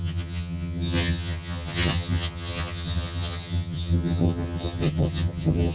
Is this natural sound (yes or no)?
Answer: no